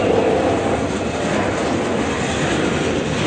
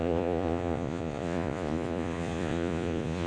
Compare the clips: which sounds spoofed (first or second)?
second